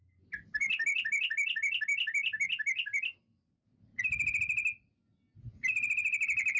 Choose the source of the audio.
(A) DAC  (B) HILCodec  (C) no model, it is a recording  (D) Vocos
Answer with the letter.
C